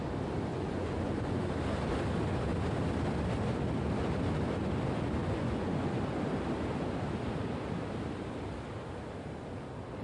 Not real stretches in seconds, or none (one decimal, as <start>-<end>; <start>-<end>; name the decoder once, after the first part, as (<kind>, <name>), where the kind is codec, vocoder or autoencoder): 0.5-1.5 (vocoder, Vocos); 5.2-5.9